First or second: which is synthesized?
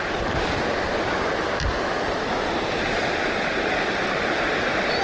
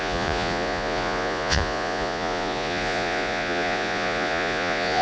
second